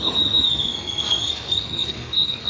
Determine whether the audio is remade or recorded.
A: remade